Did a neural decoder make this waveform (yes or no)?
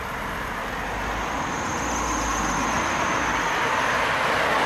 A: no